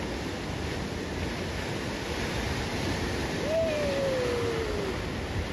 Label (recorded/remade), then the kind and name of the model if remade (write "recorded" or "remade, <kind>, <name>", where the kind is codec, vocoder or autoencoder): recorded